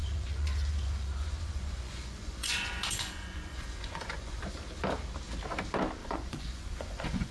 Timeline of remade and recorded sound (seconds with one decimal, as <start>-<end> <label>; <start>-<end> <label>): 0.0-4.4 remade; 4.4-6.0 recorded; 6.0-7.3 remade